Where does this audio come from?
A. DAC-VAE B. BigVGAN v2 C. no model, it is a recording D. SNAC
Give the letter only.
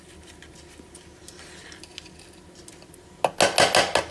C